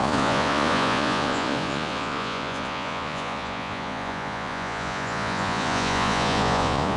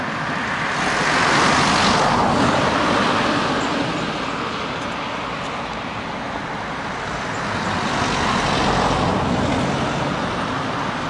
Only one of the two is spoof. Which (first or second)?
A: first